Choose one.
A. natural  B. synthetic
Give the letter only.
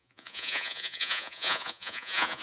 B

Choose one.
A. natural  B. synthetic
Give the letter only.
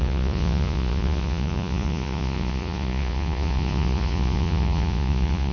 B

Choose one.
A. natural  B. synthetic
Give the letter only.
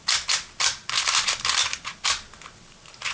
A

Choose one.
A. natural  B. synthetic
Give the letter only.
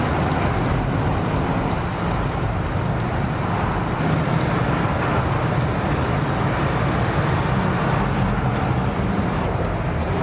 A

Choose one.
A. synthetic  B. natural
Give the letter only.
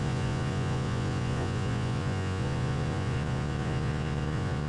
A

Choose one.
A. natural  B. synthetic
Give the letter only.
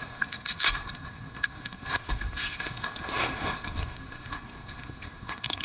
B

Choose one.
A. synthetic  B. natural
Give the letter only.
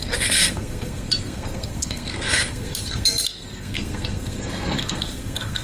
A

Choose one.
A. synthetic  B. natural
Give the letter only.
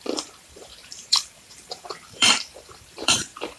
A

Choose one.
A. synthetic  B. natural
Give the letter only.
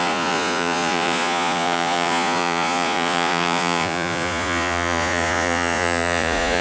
A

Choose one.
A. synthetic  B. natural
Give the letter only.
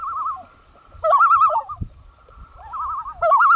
B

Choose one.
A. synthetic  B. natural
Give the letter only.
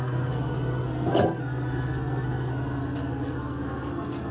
A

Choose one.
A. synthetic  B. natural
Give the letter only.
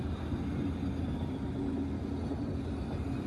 B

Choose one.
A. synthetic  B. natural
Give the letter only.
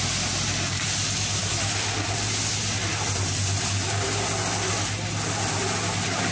B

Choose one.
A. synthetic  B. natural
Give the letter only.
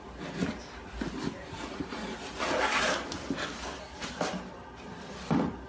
B